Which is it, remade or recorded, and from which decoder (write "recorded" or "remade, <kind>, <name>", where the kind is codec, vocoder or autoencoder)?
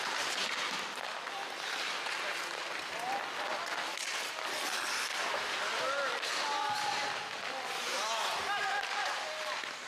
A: recorded